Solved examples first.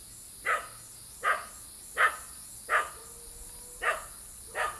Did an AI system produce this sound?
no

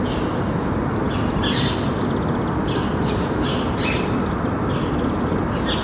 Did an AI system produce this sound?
no